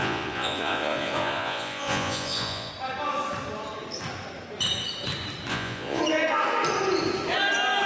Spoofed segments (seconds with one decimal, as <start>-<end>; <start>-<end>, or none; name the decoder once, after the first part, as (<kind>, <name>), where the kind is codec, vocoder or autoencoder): 0.0-2.7 (vocoder, Vocos); 5.5-6.0